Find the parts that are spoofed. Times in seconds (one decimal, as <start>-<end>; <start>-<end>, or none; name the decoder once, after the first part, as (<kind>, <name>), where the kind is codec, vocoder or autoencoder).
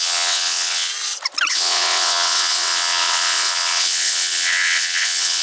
0.0-0.9 (vocoder, WaveNeXt); 1.5-5.4